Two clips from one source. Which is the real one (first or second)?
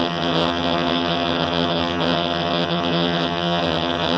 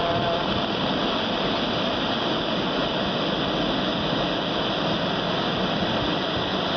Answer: second